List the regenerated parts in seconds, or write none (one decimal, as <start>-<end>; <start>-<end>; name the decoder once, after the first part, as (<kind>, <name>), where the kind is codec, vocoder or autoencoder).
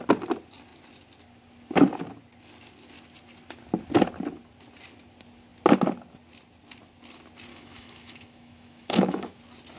7.5-9.4 (autoencoder, DAC-VAE)